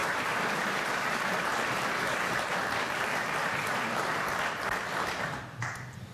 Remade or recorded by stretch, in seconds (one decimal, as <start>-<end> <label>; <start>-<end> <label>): 0.0-3.7 remade; 3.7-6.1 recorded

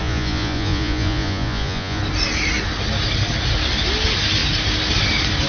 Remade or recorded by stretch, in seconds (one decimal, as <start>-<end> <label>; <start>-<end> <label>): 0.0-2.0 remade; 2.0-5.5 recorded

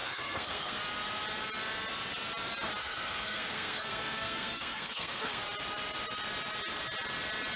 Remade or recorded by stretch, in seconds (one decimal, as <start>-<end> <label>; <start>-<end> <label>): 0.0-0.8 remade; 0.8-2.8 recorded; 2.8-5.4 remade; 5.4-7.6 recorded

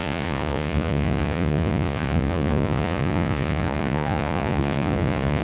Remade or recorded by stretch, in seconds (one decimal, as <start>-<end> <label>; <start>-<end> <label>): 0.0-5.4 remade

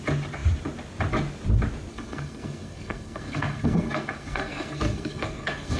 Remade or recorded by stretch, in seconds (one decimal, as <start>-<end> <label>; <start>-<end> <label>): 0.0-1.9 recorded; 1.9-5.8 remade

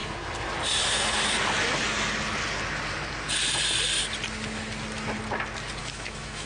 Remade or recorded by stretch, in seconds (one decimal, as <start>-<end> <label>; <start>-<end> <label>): 0.0-5.8 recorded; 5.8-6.5 remade

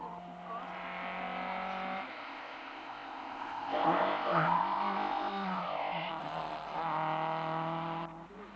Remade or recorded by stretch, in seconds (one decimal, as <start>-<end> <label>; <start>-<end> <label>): 0.0-2.1 recorded; 2.1-6.1 remade; 6.1-8.6 recorded